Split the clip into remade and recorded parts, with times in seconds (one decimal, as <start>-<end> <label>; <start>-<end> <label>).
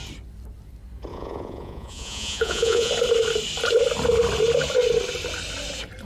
0.0-1.1 recorded; 1.1-2.9 remade; 2.9-6.0 recorded